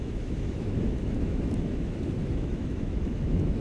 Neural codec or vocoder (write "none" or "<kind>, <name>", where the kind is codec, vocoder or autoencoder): autoencoder, DAC-VAE